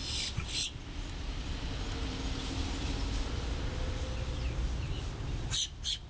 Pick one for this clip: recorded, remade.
recorded